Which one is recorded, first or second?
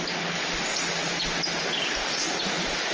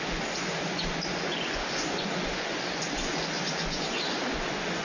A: first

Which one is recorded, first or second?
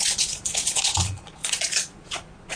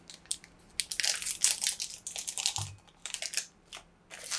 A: second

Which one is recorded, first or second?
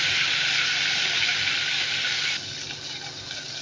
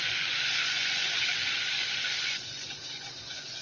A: first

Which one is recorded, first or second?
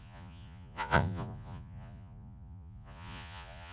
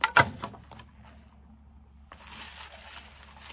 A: second